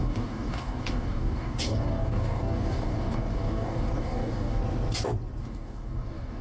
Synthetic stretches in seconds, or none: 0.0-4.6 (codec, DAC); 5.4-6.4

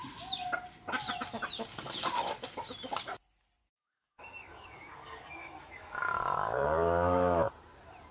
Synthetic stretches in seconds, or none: 3.6-7.5 (codec, DAC)

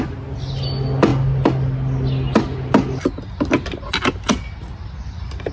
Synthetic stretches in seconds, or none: none

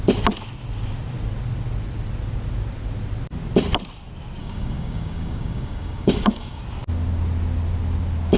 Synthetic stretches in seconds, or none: 4.4-6.6 (codec, DAC)